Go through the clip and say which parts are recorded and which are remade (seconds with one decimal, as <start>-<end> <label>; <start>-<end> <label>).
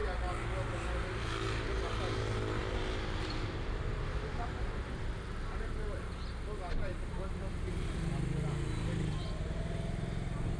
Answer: 0.0-2.6 recorded; 2.6-5.0 remade; 5.0-6.9 recorded; 6.9-7.7 remade; 7.7-10.6 recorded